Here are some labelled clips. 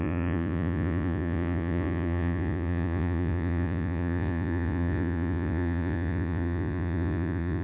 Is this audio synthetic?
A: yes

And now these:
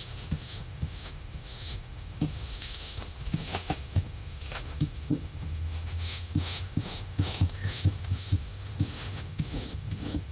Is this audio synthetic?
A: yes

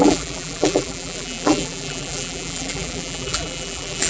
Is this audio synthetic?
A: yes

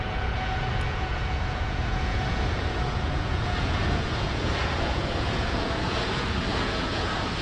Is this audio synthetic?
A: yes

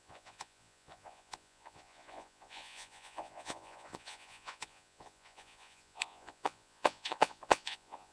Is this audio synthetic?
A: yes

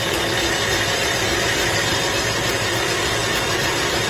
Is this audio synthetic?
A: no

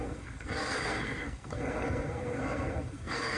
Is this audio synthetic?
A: yes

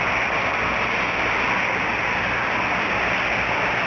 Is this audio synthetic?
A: no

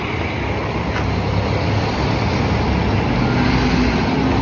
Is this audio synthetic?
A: no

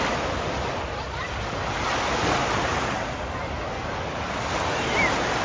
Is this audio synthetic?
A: no